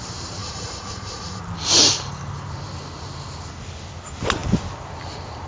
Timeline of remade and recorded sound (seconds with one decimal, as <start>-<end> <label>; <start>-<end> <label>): 0.0-0.4 recorded; 0.4-1.4 remade; 1.4-5.5 recorded